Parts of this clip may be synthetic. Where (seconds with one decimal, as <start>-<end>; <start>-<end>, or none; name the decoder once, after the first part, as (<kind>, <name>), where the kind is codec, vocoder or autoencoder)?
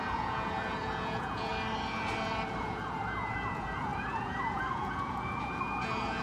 0.0-1.5 (vocoder, Vocos); 2.6-6.2